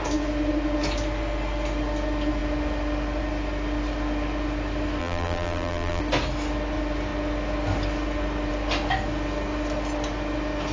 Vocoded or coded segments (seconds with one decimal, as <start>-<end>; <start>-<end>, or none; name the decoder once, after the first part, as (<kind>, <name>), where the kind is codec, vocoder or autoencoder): 5.0-6.0 (vocoder, BigVGAN v2)